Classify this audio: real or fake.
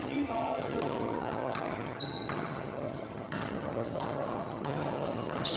fake